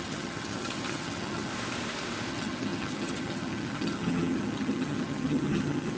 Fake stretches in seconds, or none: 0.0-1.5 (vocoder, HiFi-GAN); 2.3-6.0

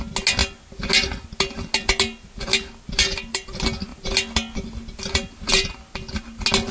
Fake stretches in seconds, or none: none

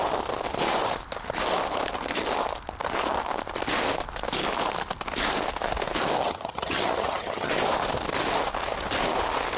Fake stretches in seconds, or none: 6.2-7.5 (vocoder, HiFi-GAN)

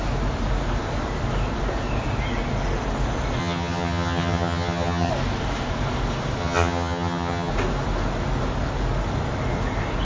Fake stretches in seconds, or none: 3.4-5.1 (vocoder, HiFi-GAN); 6.4-7.5